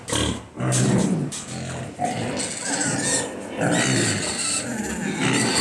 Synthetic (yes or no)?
no